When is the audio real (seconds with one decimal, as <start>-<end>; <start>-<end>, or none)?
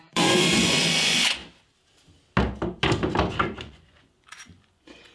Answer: 1.4-3.6